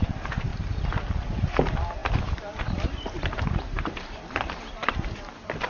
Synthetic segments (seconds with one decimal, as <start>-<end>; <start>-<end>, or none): 0.0-0.5; 1.3-5.7